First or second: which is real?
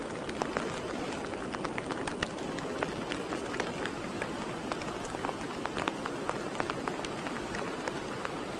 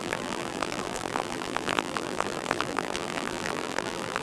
first